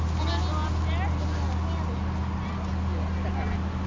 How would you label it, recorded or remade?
recorded